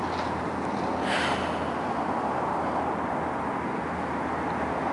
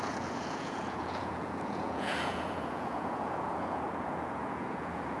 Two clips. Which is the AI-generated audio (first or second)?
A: second